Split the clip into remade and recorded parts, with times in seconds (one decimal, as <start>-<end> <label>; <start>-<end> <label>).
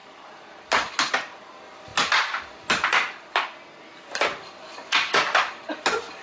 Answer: 0.0-6.2 recorded